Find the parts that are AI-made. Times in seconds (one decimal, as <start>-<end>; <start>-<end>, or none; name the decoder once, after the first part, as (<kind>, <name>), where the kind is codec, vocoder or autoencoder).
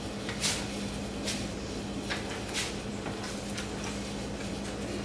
none